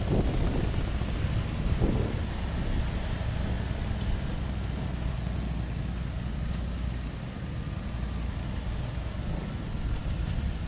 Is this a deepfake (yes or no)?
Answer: no